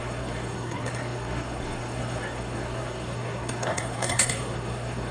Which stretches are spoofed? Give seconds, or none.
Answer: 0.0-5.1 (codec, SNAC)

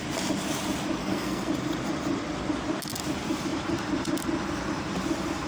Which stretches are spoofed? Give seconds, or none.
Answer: 1.0-1.5 (codec, SNAC)

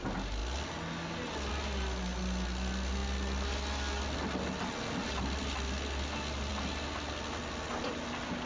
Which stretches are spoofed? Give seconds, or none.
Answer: none